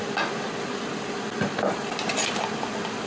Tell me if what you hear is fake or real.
real